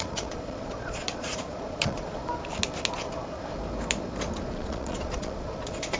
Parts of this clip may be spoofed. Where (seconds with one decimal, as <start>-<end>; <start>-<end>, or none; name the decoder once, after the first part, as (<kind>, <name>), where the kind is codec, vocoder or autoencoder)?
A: 0.0-2.2 (vocoder, Vocos); 4.5-6.0